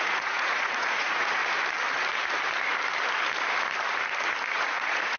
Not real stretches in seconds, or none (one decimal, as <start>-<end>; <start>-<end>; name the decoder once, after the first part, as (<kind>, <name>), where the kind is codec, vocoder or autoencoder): 0.0-1.4 (vocoder, Vocos); 4.5-5.2